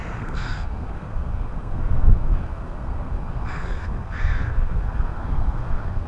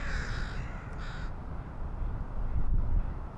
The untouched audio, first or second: second